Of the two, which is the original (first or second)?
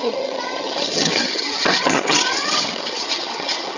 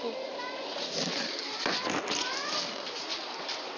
second